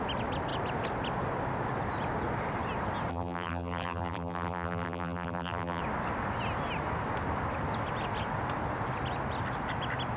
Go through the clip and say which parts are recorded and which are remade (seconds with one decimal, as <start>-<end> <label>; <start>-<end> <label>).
0.0-3.1 recorded; 3.1-5.8 remade; 5.8-10.2 recorded

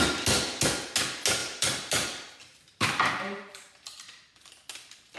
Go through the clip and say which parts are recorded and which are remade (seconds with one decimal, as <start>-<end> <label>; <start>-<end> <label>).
0.0-1.4 recorded; 1.4-4.5 remade; 4.5-5.2 recorded

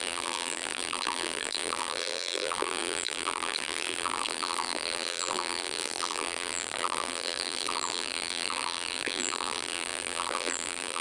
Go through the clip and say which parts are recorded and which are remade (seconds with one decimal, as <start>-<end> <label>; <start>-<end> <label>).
0.0-11.0 remade

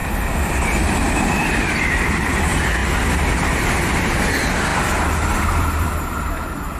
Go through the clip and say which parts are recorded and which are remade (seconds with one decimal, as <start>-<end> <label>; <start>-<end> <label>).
0.0-2.2 remade; 2.2-4.7 recorded; 4.7-5.9 remade; 5.9-6.8 recorded

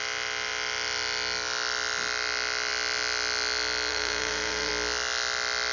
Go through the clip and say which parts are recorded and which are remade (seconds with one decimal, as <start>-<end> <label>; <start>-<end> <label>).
0.0-3.9 recorded; 3.9-4.7 remade; 4.7-5.7 recorded

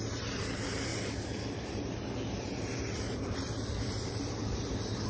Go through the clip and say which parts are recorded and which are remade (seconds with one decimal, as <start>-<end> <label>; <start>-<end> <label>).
0.0-5.1 remade

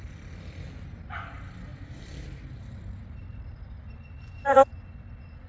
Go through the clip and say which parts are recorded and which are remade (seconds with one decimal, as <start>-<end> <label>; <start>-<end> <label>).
0.0-5.5 recorded